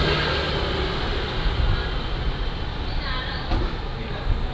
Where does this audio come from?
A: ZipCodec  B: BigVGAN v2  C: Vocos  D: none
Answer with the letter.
D